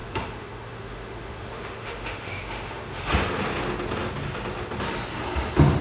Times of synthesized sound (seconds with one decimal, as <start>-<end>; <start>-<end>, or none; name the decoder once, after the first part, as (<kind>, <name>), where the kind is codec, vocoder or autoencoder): 0.0-3.1 (autoencoder, DAC-VAE)